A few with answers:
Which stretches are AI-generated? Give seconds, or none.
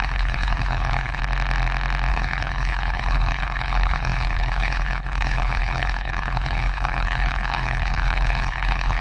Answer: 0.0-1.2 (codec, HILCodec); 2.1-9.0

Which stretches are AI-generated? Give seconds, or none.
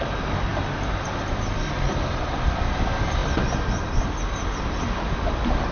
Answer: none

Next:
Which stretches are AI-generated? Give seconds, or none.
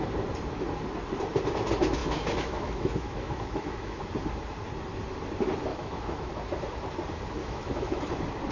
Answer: 2.0-4.0 (autoencoder, DAC-VAE); 5.7-6.3; 7.4-8.1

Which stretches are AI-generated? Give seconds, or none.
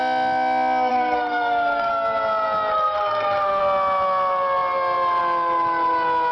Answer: 0.9-1.9 (codec, SNAC); 2.7-3.6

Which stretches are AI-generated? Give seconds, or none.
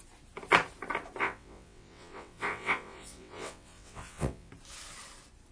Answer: 1.2-4.5 (vocoder, WaveNeXt)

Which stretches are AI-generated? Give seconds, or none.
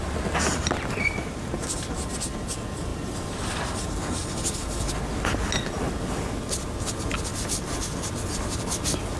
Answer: 2.9-3.6 (vocoder, BigVGAN v2); 4.2-4.9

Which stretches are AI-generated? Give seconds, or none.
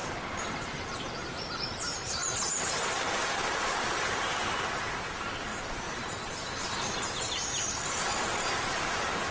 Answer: 5.5-7.3 (vocoder, BigVGAN v2)